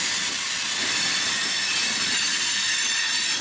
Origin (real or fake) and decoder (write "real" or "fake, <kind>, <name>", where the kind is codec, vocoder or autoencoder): real